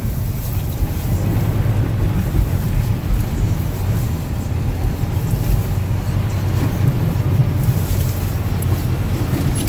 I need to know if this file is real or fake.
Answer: real